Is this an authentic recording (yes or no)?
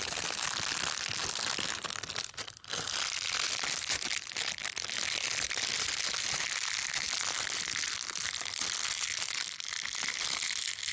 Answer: yes